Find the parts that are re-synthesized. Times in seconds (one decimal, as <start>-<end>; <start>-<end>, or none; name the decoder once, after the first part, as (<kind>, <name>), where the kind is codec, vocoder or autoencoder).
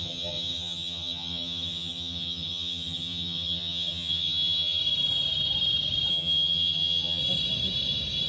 0.0-4.8 (vocoder, HiFi-GAN); 6.1-7.2